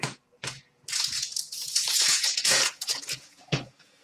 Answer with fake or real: fake